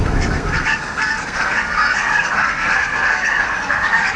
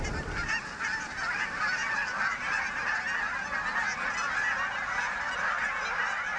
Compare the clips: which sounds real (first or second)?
second